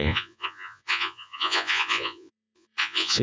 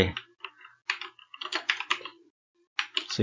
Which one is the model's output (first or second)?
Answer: first